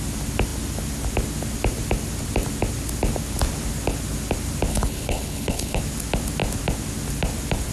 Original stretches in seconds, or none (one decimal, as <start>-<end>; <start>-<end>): 0.0-4.7; 5.8-7.7

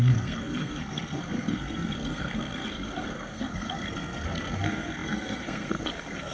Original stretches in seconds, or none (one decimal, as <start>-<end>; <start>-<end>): none

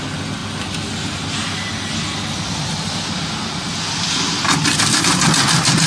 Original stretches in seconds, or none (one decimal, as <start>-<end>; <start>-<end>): 0.0-5.9

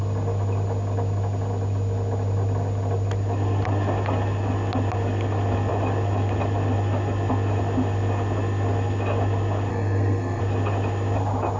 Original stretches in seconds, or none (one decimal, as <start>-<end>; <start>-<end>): 0.0-9.7; 10.4-11.6

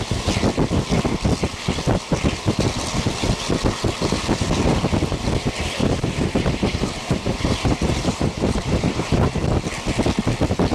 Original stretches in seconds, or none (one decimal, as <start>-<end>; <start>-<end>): 0.0-5.8; 9.5-10.7

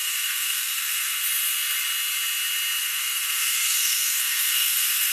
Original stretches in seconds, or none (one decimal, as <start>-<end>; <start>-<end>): 1.2-2.8

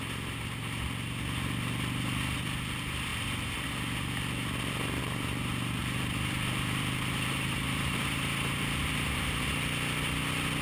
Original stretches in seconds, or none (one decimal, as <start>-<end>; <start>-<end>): 0.0-5.8; 9.5-10.6